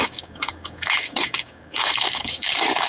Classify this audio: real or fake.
fake